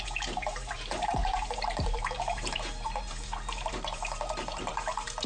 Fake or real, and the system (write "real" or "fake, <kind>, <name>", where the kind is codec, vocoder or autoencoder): fake, vocoder, BigVGAN v2